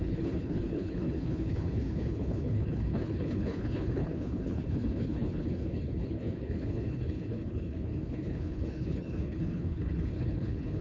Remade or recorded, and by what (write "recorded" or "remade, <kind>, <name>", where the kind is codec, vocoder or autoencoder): remade, codec, HILCodec